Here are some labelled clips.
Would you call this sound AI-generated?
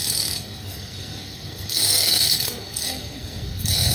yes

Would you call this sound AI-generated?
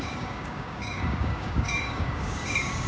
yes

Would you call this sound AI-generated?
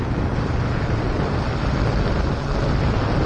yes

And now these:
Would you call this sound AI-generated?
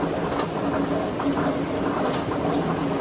no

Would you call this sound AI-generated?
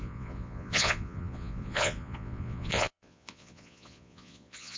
yes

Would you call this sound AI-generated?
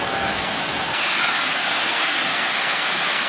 yes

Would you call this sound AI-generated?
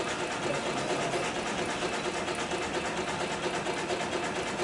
no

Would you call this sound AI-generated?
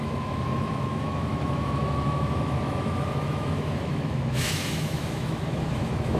yes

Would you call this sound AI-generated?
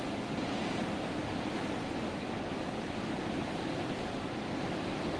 no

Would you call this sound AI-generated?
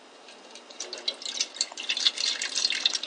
no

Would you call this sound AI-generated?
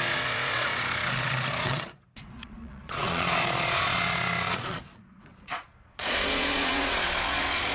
yes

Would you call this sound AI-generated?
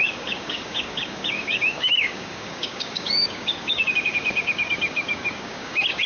yes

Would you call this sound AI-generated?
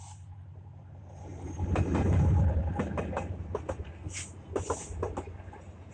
no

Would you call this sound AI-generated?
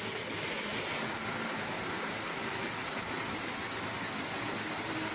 no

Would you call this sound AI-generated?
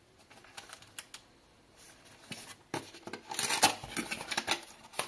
no